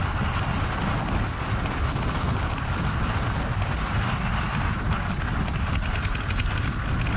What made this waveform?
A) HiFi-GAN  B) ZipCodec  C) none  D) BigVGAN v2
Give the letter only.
C